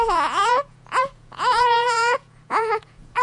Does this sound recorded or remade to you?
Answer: remade